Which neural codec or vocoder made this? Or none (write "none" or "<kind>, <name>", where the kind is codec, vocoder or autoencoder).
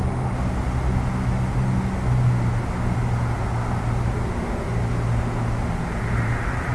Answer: none